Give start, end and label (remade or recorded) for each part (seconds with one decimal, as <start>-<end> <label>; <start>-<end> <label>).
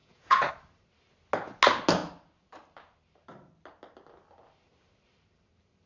0.0-0.5 remade; 0.5-5.9 recorded